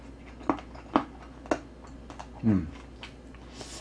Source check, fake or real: real